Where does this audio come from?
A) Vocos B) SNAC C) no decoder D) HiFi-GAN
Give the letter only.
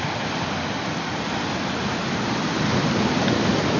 C